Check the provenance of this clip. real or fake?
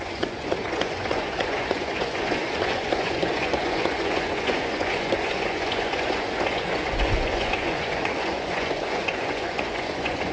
fake